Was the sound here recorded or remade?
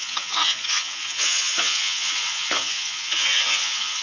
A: remade